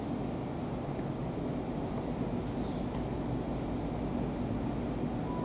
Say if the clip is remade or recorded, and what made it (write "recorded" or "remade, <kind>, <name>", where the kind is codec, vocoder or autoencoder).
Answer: recorded